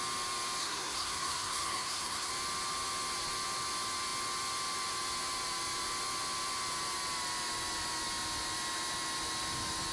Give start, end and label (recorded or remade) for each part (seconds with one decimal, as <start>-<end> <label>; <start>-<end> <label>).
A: 0.0-0.6 recorded; 0.6-2.3 remade; 2.3-9.9 recorded